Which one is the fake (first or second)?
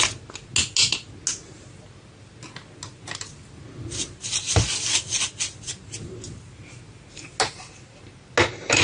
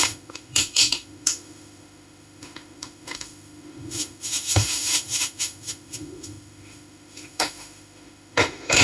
second